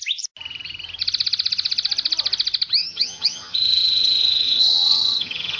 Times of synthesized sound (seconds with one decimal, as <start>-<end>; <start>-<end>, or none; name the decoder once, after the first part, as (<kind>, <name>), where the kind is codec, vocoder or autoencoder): 2.8-5.6 (vocoder, HiFi-GAN)